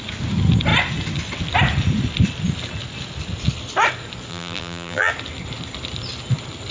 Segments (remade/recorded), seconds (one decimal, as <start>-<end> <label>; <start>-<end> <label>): 0.0-4.3 recorded; 4.3-5.1 remade; 5.1-6.7 recorded